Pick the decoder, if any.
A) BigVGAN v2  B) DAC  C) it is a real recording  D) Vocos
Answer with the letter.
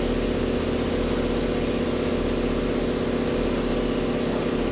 C